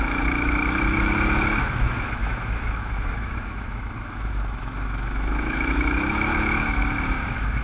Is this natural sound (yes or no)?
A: no